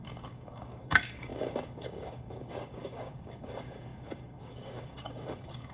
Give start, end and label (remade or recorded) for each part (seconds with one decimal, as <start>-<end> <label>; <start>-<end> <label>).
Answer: 0.0-5.7 remade